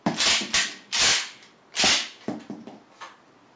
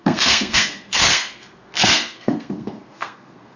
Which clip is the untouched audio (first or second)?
first